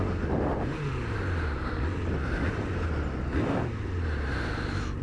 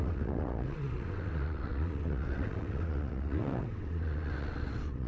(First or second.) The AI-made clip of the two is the second